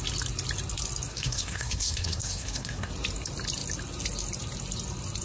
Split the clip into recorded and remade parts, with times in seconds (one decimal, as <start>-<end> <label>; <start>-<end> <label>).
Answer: 0.0-1.1 recorded; 1.1-2.9 remade; 2.9-5.2 recorded